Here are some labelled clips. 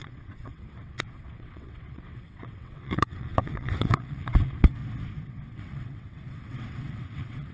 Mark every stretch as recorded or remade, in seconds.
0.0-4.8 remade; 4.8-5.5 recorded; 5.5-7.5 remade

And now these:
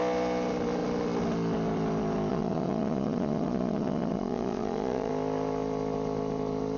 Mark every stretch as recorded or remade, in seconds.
0.0-2.3 recorded; 2.3-5.1 remade; 5.1-6.8 recorded

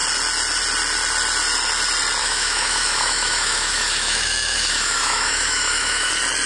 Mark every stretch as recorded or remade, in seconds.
0.0-2.2 recorded; 2.2-6.1 remade; 6.1-6.5 recorded

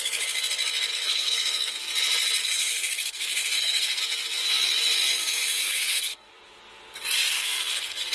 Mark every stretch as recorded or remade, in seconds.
0.0-0.9 recorded; 0.9-1.7 remade; 1.7-2.4 recorded; 2.4-4.0 remade; 4.0-5.2 recorded; 5.2-6.3 remade; 6.3-7.3 recorded; 7.3-8.1 remade

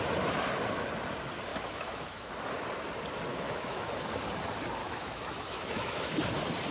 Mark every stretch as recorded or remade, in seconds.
0.0-1.5 recorded; 1.5-2.3 remade; 2.3-3.3 recorded; 3.3-4.2 remade; 4.2-4.8 recorded; 4.8-6.3 remade; 6.3-6.7 recorded

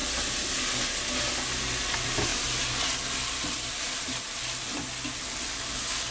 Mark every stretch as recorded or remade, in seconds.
0.0-6.1 recorded

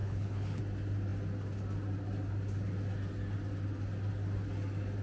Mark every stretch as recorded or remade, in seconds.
0.0-0.6 remade; 0.6-5.0 recorded

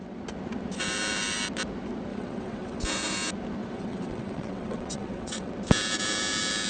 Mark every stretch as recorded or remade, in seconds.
0.0-2.1 recorded; 2.1-2.8 remade; 2.8-3.6 recorded; 3.6-5.5 remade; 5.5-6.7 recorded